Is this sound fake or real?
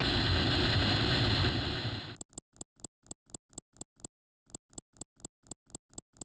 real